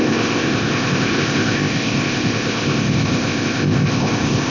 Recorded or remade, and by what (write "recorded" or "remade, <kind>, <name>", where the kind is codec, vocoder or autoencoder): remade, codec, ZipCodec